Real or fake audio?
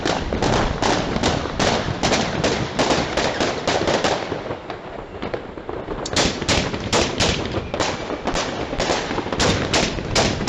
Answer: real